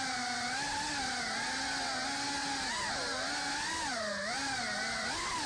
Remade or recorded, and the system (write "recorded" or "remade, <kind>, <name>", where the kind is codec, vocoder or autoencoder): recorded